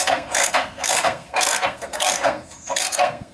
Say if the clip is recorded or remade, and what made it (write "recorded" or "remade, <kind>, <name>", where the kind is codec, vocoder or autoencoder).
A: remade, codec, SNAC